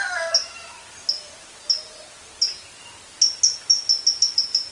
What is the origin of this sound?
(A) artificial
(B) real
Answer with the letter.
B